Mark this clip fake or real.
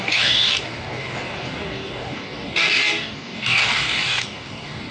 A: fake